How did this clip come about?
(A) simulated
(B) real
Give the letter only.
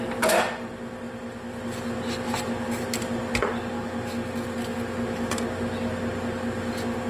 B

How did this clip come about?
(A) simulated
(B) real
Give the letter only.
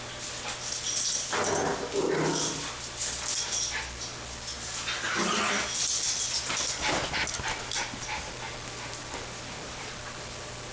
B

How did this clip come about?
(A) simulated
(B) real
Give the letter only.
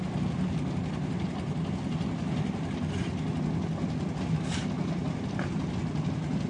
B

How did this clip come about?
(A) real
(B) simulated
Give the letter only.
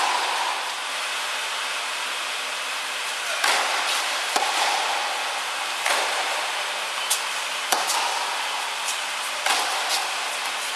A